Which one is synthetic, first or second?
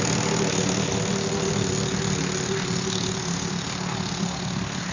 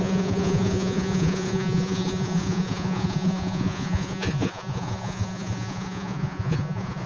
second